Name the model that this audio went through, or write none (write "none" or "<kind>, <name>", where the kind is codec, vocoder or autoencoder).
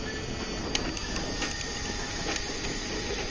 none